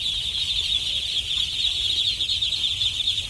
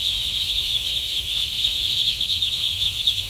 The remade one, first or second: second